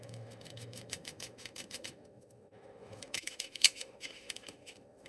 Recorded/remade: remade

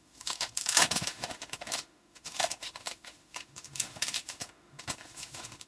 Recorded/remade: remade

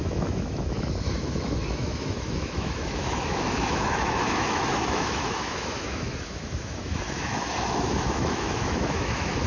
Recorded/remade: remade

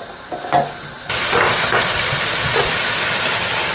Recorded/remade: recorded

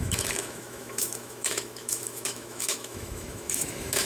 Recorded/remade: remade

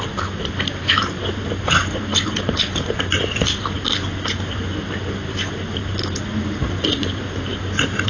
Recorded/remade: recorded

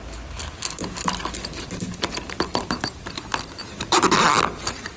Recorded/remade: recorded